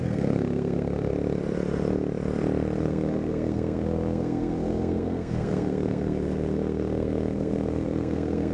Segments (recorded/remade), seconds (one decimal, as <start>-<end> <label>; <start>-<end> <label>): 0.0-1.1 remade; 1.1-2.8 recorded; 2.8-8.5 remade